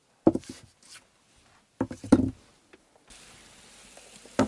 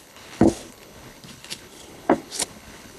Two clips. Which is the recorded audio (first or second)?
first